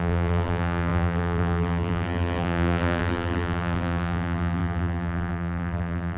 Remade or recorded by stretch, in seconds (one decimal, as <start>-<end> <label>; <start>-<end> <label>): 0.0-6.2 remade